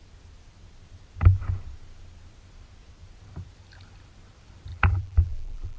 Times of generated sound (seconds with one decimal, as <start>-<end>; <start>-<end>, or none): 4.7-5.8